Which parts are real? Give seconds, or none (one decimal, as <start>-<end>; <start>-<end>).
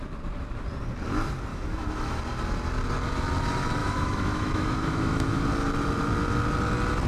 0.0-1.5; 2.2-3.8; 5.4-7.1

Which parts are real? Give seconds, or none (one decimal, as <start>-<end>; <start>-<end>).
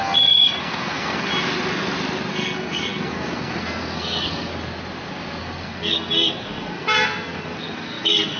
1.3-2.3; 4.5-5.4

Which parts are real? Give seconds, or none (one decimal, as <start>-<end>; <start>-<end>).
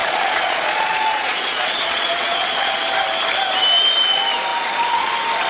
2.8-4.5; 5.1-5.5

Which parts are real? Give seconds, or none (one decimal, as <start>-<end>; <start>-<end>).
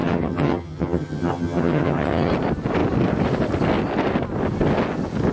2.3-5.3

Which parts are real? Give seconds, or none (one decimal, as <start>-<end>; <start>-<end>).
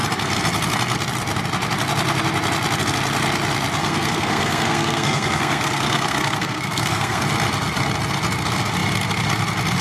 0.0-3.8; 7.2-9.8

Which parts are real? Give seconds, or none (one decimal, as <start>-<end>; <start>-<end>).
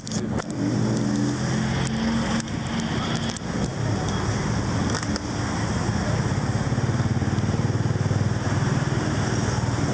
0.0-9.9